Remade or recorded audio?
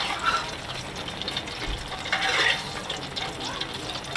recorded